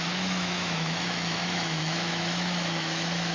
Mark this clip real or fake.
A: fake